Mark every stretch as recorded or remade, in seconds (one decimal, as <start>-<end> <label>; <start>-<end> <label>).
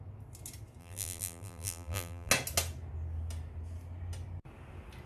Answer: 0.0-0.8 recorded; 0.8-2.3 remade; 2.3-5.1 recorded